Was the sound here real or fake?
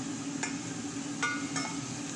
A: real